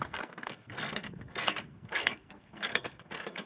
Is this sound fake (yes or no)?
yes